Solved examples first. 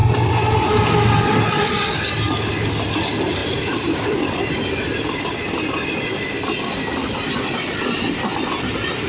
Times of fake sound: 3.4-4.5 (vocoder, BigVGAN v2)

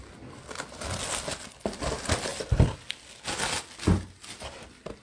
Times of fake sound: none